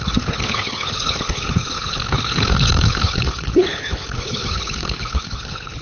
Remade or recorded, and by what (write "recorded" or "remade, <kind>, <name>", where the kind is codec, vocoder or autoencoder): remade, codec, HILCodec